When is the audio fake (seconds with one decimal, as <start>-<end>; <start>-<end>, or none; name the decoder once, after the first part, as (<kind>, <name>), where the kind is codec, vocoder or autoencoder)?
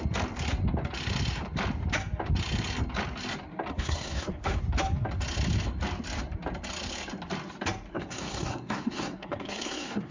3.7-4.6 (codec, SNAC); 7.9-10.1